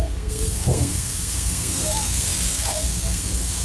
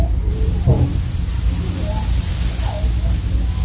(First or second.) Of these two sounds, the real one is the second